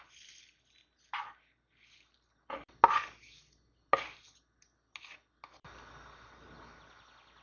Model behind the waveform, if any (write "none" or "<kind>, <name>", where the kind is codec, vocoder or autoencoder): none